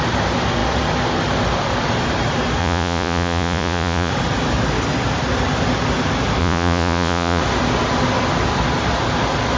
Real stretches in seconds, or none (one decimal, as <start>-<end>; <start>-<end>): 0.0-2.6; 4.1-6.4; 7.4-9.6